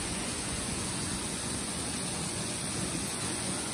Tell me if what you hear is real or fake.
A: fake